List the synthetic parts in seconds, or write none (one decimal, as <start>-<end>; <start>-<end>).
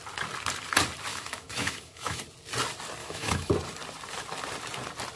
1.1-2.2; 3.0-3.5